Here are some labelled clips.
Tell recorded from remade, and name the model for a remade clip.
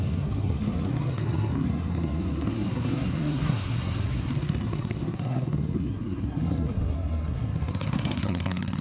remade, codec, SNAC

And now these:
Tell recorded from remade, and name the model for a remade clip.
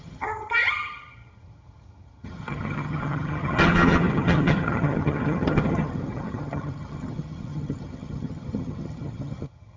remade, vocoder, HiFi-GAN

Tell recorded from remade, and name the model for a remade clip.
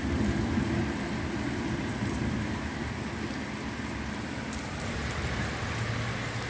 recorded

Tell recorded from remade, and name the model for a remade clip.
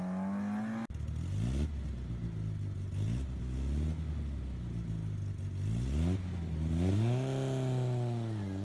recorded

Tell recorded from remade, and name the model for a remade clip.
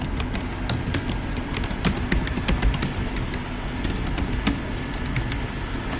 recorded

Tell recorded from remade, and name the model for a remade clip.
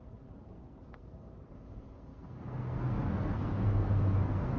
remade, codec, SNAC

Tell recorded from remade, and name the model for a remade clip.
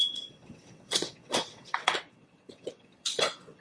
remade, vocoder, WaveNeXt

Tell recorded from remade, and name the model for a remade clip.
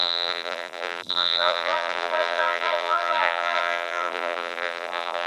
remade, vocoder, BigVGAN v2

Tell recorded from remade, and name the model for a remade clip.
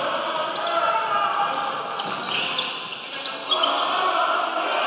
recorded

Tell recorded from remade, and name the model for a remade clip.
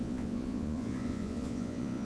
remade, vocoder, Vocos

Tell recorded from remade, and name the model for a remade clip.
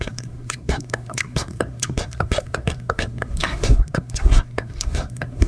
remade, codec, SNAC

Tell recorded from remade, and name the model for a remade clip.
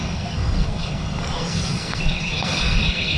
remade, codec, SNAC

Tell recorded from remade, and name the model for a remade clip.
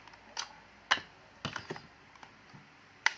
recorded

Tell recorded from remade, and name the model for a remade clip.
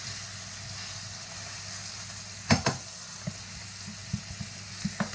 recorded